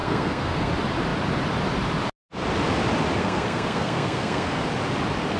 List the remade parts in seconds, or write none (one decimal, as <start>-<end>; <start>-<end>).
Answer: 0.0-0.7; 3.2-4.6